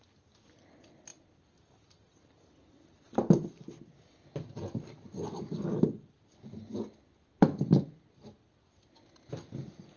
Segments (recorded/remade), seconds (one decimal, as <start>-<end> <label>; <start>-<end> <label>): 0.0-10.0 recorded